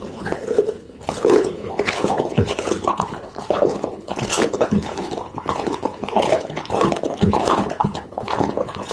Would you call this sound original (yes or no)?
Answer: no